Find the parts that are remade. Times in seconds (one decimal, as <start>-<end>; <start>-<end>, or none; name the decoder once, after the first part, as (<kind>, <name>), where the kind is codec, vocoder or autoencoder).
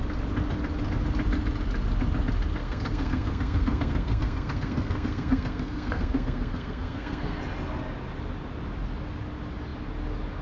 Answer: 2.6-7.4 (codec, SNAC)